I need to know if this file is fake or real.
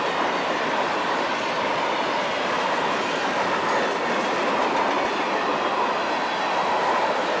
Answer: real